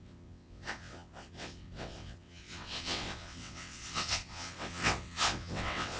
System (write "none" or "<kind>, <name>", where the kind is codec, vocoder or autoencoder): vocoder, WaveNeXt